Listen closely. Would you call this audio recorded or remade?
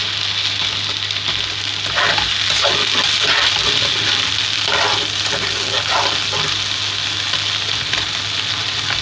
recorded